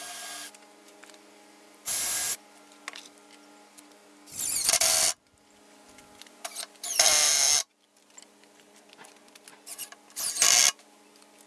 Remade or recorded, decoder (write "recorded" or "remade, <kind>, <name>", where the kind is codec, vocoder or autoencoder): recorded